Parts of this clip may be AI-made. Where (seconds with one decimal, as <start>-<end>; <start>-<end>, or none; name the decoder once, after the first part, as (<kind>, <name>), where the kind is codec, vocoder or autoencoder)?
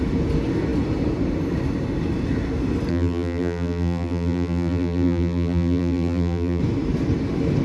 2.9-6.6 (vocoder, BigVGAN v2)